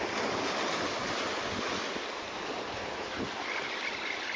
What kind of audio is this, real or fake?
real